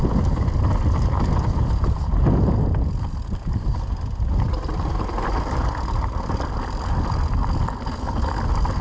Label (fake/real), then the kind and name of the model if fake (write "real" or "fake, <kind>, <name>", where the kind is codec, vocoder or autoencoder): real